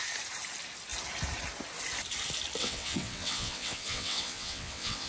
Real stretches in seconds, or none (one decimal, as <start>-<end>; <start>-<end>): 0.0-2.6

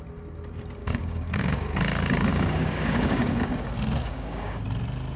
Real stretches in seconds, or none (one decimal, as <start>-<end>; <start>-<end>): 0.0-0.8; 1.8-2.3; 4.6-5.2

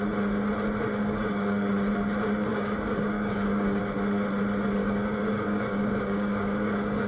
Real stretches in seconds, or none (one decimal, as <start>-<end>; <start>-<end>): 0.0-0.9; 1.7-2.5; 3.8-4.8

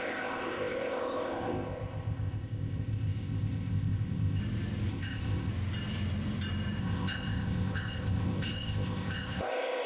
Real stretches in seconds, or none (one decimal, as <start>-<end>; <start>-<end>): 4.4-4.9; 5.5-6.8

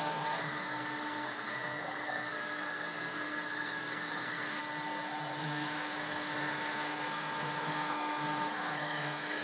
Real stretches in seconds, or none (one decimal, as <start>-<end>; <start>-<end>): 4.6-5.4